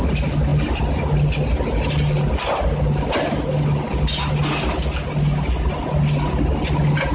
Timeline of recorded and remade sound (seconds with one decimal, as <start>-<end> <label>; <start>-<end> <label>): 0.0-7.1 recorded